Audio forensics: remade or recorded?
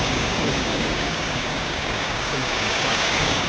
remade